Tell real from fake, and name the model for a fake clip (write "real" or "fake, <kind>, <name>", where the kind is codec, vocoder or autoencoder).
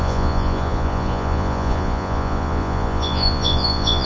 fake, vocoder, Vocos